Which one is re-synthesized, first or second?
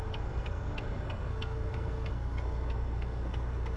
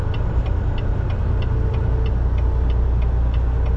first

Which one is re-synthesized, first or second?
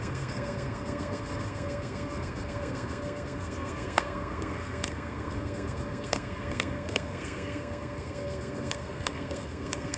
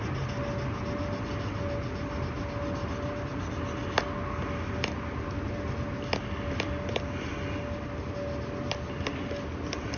first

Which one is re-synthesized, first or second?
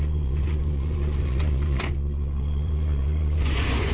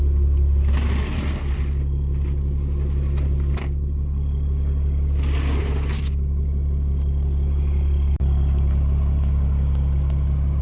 first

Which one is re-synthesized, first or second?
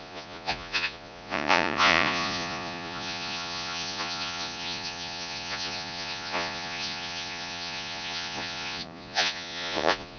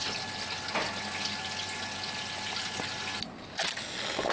first